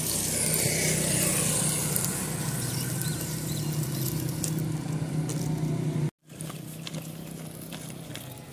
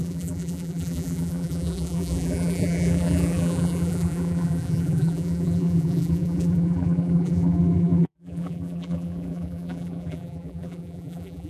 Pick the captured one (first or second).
first